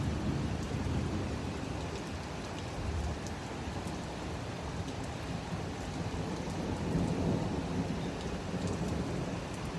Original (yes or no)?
yes